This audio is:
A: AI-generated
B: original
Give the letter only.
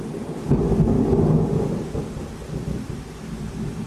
B